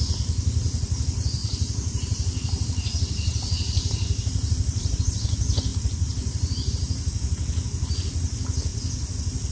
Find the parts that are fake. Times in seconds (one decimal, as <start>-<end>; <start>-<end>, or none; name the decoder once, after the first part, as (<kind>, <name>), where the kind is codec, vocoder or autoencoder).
1.4-5.0 (vocoder, BigVGAN v2); 5.7-6.7